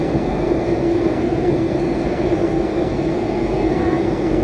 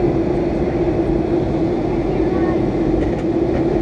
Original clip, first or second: second